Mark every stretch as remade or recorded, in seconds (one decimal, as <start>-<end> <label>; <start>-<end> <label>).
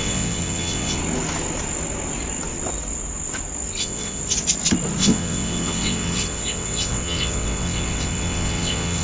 0.0-1.0 remade; 1.0-3.8 recorded; 3.8-4.2 remade; 4.2-5.0 recorded; 5.0-9.0 remade